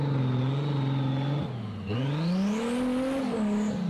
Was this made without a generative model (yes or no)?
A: yes